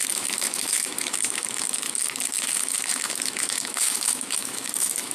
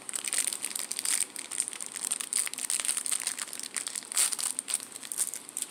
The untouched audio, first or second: second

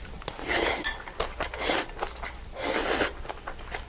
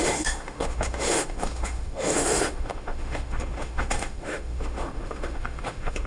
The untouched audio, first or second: first